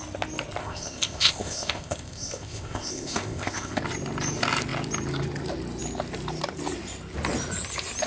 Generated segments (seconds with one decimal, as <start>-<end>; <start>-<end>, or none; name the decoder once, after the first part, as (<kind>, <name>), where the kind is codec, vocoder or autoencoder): 0.6-3.8 (codec, ZipCodec)